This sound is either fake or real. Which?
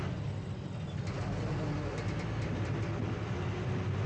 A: real